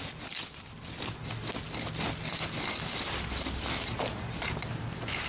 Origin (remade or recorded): recorded